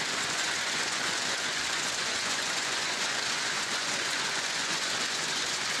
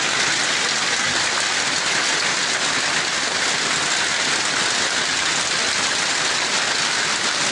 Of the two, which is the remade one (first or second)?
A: first